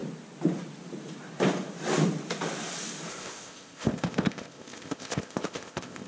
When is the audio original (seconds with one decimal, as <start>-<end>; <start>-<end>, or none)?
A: 0.0-3.1